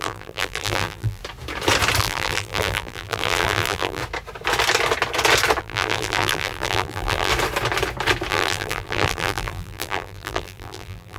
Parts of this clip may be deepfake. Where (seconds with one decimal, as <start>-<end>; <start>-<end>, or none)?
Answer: 0.0-1.2; 2.0-4.0; 5.6-7.3; 8.3-11.2